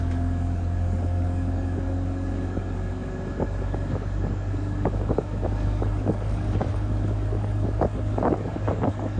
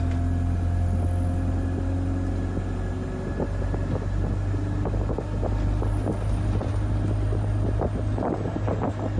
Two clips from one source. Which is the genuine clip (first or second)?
second